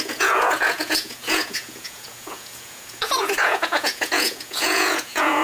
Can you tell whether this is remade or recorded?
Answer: remade